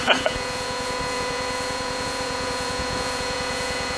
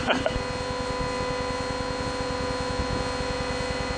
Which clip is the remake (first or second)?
first